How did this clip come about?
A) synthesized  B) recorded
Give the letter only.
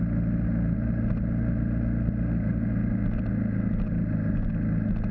B